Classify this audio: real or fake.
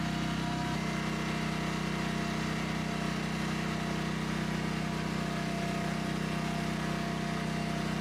real